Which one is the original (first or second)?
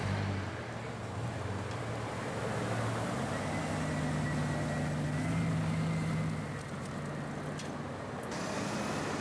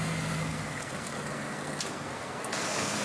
first